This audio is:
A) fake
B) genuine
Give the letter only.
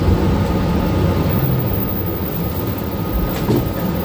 B